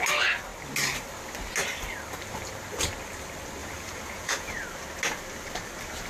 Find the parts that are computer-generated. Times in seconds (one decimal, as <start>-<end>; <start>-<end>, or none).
3.6-4.5